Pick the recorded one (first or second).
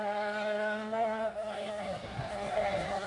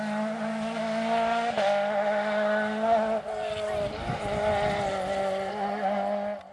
second